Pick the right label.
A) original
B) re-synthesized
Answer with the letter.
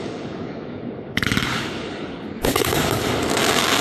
B